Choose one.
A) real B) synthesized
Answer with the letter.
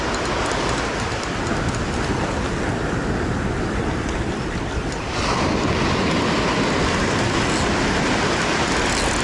A